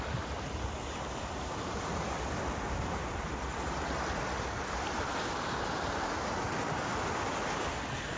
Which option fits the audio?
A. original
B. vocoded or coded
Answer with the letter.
B